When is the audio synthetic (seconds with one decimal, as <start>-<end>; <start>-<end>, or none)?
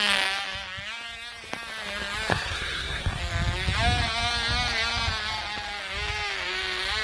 2.3-3.2